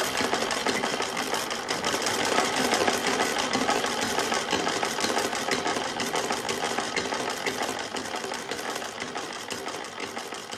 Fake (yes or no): no